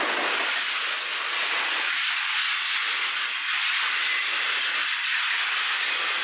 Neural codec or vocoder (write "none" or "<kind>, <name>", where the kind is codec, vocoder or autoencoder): none